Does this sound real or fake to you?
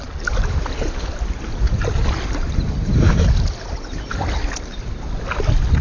real